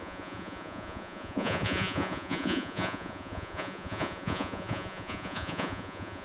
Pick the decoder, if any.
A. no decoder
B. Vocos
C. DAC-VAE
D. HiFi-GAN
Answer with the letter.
B